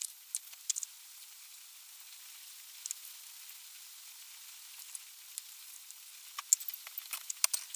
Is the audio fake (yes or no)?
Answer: no